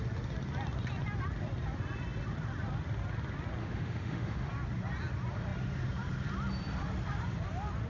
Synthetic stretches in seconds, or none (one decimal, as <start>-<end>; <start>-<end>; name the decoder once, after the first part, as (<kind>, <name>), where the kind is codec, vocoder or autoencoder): 3.6-4.5 (autoencoder, DAC-VAE)